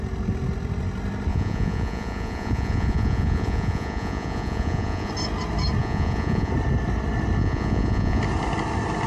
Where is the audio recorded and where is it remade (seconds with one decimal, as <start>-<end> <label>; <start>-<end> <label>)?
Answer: 0.0-1.3 recorded; 1.3-5.1 remade; 5.1-5.8 recorded; 5.8-6.5 remade; 6.5-7.4 recorded; 7.4-8.2 remade; 8.2-9.1 recorded